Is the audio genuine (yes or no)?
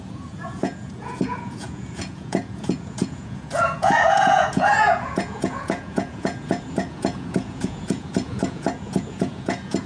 no